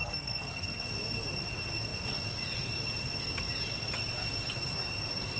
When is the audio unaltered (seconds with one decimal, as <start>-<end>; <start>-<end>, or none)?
0.8-5.4